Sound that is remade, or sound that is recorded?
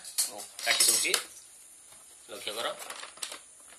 recorded